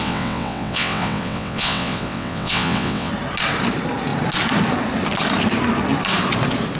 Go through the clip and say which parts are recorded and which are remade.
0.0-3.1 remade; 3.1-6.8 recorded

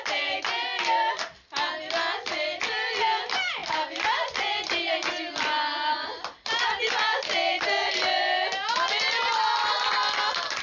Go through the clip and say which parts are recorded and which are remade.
0.0-10.6 recorded